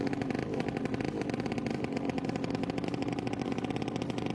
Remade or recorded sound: recorded